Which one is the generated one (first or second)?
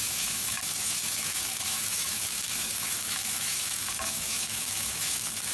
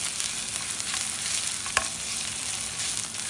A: first